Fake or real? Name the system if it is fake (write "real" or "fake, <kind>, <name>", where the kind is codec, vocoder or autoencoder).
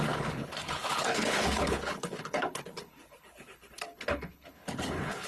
fake, codec, HILCodec